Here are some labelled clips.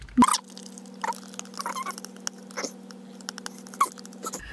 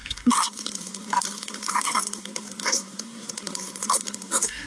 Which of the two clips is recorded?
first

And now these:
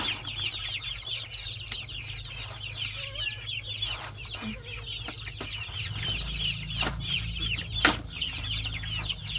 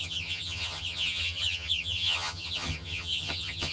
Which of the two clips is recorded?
first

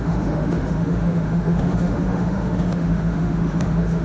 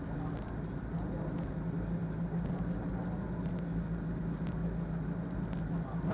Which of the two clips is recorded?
second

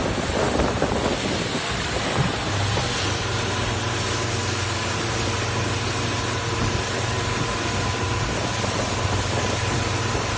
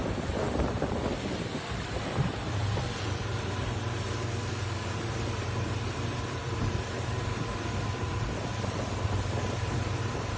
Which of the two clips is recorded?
first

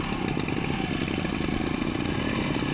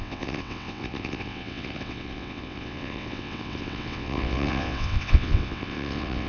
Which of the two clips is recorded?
first